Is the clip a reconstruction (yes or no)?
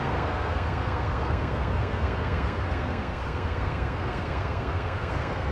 yes